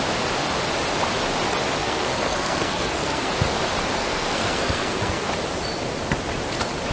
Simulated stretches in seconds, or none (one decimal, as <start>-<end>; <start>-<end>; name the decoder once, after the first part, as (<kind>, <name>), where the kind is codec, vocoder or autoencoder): 1.8-3.3 (codec, SNAC); 4.0-5.3